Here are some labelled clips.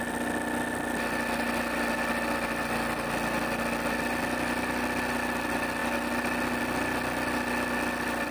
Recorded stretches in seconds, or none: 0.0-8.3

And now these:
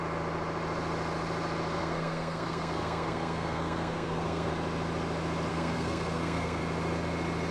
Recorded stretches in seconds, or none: 0.0-1.8; 4.5-5.5; 6.6-7.5

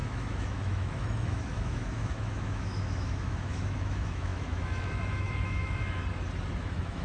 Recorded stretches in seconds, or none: 6.0-6.6